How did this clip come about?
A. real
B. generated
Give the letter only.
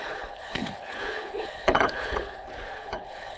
B